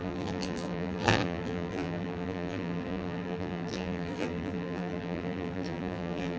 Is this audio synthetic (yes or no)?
yes